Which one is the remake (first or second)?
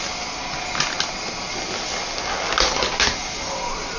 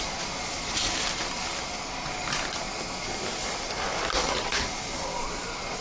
second